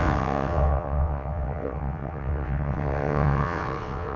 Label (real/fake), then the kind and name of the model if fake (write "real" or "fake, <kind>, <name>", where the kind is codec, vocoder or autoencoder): fake, vocoder, WaveNeXt